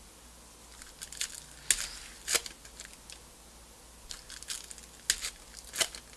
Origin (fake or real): real